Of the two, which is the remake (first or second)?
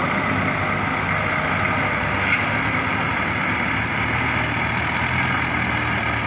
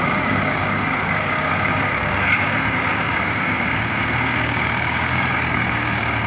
second